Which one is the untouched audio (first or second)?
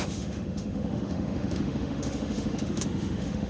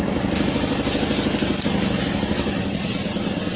second